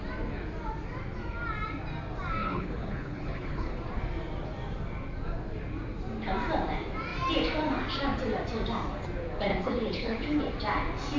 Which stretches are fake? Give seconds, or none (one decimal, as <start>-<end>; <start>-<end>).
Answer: 2.4-3.8; 9.5-10.4